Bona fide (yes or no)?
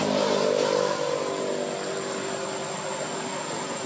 yes